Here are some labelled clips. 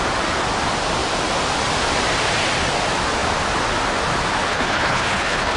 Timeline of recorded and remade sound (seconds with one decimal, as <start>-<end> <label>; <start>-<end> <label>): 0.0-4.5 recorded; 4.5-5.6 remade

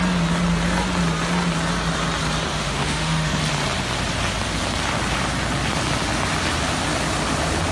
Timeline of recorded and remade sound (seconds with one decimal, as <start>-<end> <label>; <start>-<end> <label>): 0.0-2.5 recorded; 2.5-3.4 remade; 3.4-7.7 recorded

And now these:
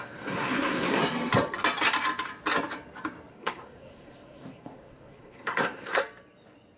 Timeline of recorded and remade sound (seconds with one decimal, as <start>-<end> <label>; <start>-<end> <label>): 0.0-1.0 remade; 1.0-3.3 recorded; 3.3-6.0 remade; 6.0-6.8 recorded

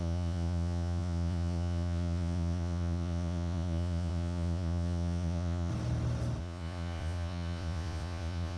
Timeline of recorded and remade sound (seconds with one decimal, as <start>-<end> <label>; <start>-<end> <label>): 0.0-5.7 remade; 5.7-6.4 recorded; 6.4-8.6 remade

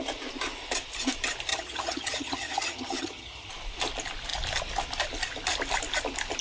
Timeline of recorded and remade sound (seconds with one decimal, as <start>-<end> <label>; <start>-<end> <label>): 0.0-1.5 recorded; 1.5-3.5 remade; 3.5-6.4 recorded